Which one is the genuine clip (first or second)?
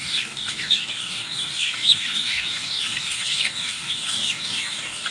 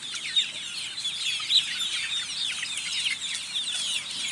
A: second